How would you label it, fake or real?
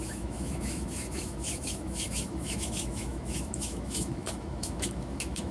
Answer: fake